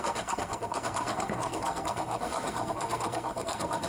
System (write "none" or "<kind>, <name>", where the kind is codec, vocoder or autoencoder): codec, SNAC